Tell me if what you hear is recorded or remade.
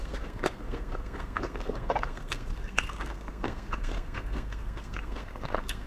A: remade